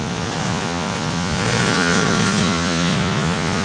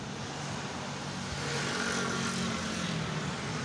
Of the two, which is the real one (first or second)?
second